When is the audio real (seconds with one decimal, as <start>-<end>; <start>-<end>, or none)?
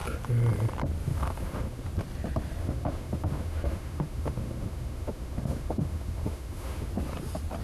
0.0-1.1; 1.9-2.6; 6.9-7.6